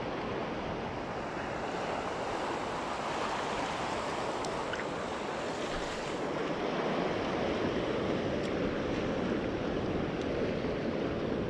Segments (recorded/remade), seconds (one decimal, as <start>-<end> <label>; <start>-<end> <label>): 0.0-11.5 recorded